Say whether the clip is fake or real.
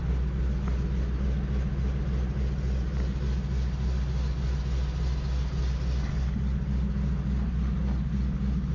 real